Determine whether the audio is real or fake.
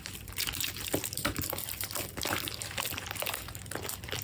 fake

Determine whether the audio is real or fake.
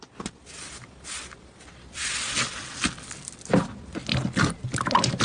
real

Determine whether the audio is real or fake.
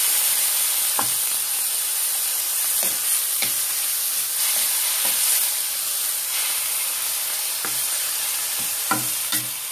real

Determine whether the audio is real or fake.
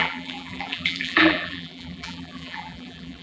fake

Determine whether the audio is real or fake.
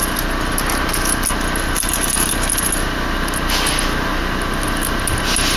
real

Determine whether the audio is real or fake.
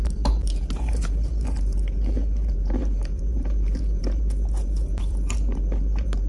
fake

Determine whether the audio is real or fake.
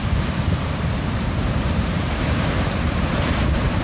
fake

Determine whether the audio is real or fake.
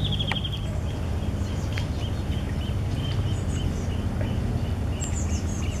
real